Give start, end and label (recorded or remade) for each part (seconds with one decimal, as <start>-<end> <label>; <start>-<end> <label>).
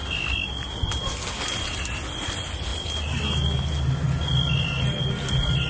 0.0-5.7 recorded